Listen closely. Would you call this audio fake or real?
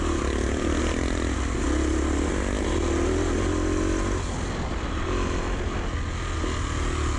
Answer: real